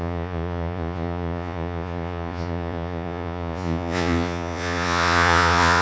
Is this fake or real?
fake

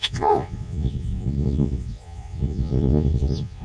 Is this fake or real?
fake